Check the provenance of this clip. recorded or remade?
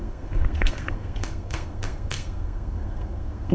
remade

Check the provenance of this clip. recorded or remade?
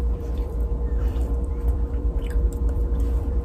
remade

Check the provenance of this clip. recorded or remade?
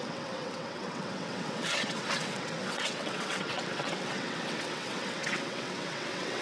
remade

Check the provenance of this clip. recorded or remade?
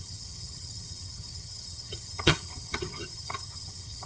remade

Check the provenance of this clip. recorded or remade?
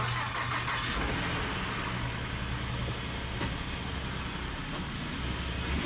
recorded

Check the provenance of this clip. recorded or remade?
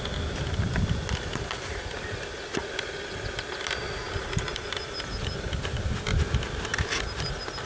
recorded